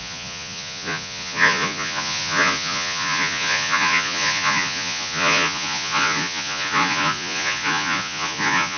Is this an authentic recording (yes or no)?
no